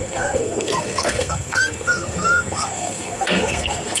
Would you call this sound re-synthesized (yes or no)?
yes